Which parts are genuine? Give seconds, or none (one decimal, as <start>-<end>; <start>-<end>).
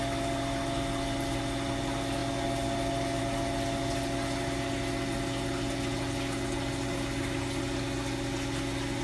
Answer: 0.0-9.0